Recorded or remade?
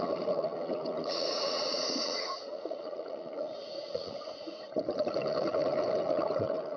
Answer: remade